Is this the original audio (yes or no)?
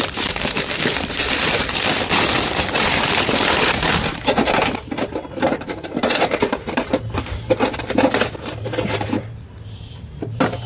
no